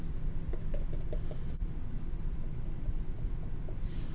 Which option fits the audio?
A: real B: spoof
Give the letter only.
B